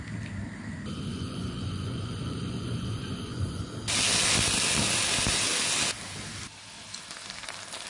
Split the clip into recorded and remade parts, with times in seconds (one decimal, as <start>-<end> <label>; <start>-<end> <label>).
0.0-1.1 recorded; 1.1-3.7 remade; 3.7-7.9 recorded